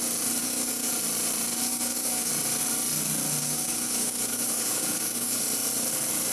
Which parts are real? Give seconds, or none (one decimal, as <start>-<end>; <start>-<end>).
0.0-0.4; 0.9-1.5; 2.3-3.4; 5.4-6.3